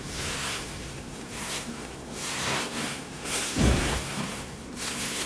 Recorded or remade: remade